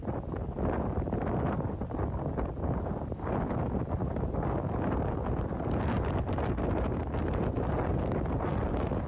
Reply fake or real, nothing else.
real